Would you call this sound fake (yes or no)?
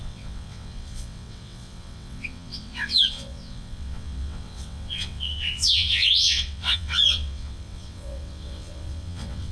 yes